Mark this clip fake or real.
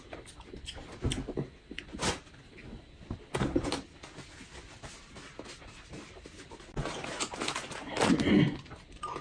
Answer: real